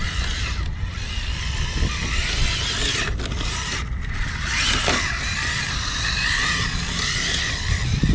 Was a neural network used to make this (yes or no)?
no